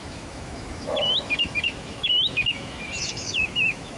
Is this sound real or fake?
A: fake